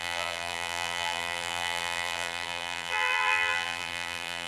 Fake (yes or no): yes